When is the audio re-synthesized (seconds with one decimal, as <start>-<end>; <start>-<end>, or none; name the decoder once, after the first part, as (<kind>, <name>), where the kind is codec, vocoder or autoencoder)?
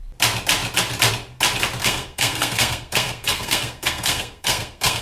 1.8-5.0 (codec, SNAC)